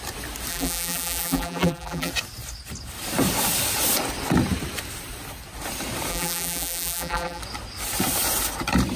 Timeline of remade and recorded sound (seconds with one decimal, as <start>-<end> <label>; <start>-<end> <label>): 0.0-0.5 recorded; 0.5-2.1 remade; 2.1-6.1 recorded; 6.1-7.4 remade; 7.4-9.0 recorded